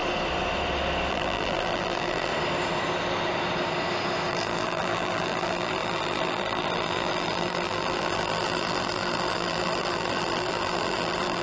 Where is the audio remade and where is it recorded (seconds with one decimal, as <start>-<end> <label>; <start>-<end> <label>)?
0.0-1.1 recorded; 1.1-2.3 remade; 2.3-4.3 recorded; 4.3-11.4 remade